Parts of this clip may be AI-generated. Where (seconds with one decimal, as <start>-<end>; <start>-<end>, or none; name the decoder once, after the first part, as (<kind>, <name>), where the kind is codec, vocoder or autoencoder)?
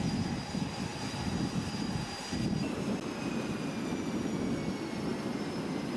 none